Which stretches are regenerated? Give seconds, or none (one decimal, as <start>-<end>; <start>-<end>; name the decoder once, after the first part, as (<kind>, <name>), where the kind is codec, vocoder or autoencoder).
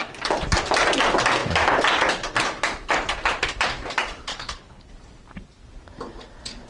4.3-4.9 (codec, HILCodec)